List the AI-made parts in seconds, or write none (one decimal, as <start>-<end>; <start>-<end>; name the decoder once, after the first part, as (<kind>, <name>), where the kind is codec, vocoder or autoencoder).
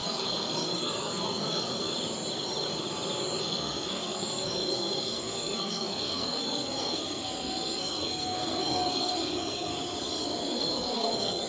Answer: 0.0-1.9 (codec, SNAC); 3.4-9.7; 10.4-11.5